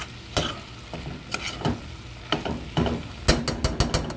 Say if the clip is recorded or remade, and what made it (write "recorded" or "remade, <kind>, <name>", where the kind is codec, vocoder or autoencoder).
recorded